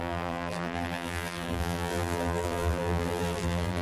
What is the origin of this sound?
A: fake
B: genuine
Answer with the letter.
A